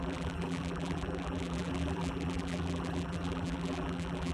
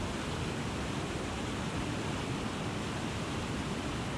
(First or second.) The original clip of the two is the second